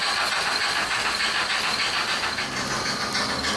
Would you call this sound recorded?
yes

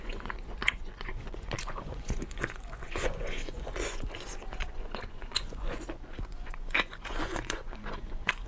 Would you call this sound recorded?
no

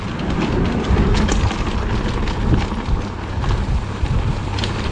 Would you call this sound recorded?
yes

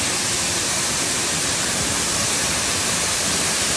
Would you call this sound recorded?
no